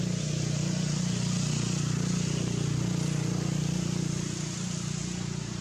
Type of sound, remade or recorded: recorded